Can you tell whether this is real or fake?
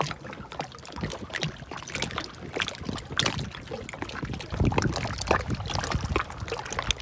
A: real